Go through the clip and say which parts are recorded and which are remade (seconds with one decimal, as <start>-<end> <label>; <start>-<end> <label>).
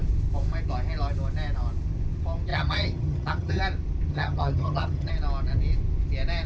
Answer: 0.0-2.5 recorded; 2.5-3.6 remade; 3.6-4.1 recorded; 4.1-5.1 remade; 5.1-6.5 recorded